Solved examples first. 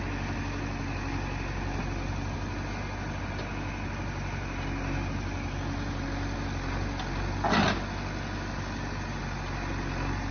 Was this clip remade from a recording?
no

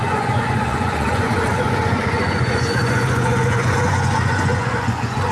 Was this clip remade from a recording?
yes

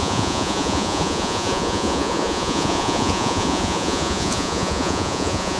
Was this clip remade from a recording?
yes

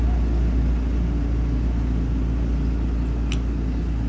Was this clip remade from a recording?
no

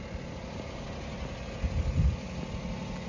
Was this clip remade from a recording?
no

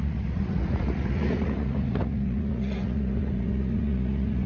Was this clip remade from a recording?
yes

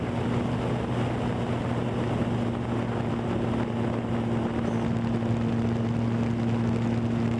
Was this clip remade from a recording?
no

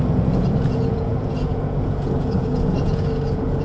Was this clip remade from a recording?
yes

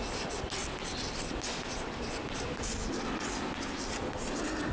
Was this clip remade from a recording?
no